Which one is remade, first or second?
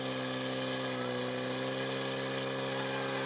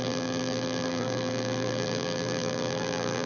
second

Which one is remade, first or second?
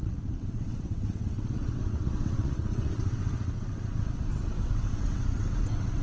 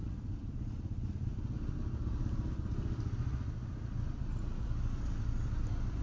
first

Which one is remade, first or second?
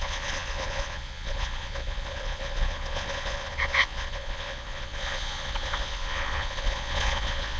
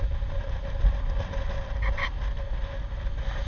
first